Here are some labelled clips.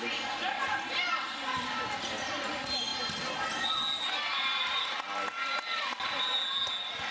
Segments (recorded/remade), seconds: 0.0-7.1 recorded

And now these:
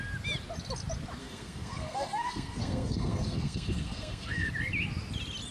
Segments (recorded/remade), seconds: 0.0-1.2 recorded; 1.2-4.5 remade; 4.5-5.5 recorded

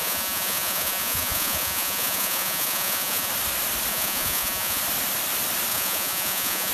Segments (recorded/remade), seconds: 0.0-3.3 remade; 3.3-3.9 recorded; 3.9-4.8 remade; 4.8-5.7 recorded; 5.7-6.7 remade

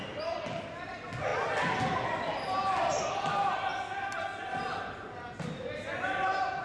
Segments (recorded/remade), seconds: 0.0-6.6 recorded

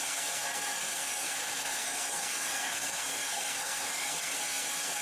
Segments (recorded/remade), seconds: 0.0-5.0 remade

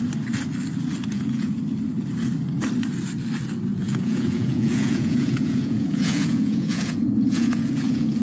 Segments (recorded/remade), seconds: 0.0-1.1 recorded; 1.1-1.6 remade; 1.6-3.7 recorded; 3.7-8.2 remade

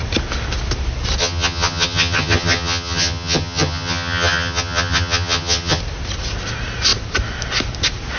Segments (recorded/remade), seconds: 0.0-1.2 recorded; 1.2-5.8 remade; 5.8-8.2 recorded